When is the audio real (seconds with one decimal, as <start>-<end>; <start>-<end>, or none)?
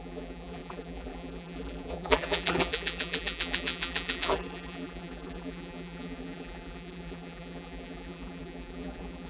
none